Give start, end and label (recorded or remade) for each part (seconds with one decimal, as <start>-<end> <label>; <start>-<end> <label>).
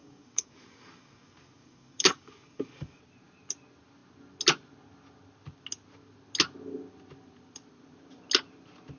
0.0-3.0 remade; 3.0-9.0 recorded